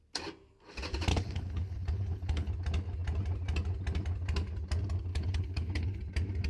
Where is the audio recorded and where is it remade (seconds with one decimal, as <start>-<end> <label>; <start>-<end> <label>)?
0.0-1.1 recorded; 1.1-2.5 remade; 2.5-5.1 recorded; 5.1-6.0 remade; 6.0-6.5 recorded